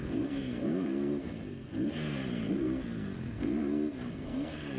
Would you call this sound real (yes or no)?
no